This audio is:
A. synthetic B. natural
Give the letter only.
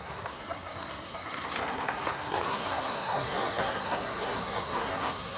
A